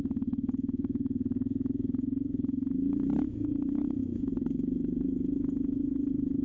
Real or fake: fake